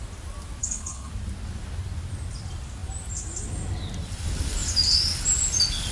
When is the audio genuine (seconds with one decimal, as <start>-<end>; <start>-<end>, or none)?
0.0-0.6; 1.1-5.9